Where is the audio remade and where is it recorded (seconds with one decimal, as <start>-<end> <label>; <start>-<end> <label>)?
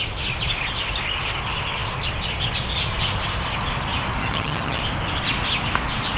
0.0-4.2 recorded; 4.2-4.8 remade; 4.8-6.2 recorded